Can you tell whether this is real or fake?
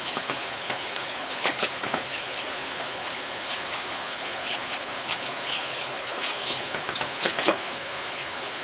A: fake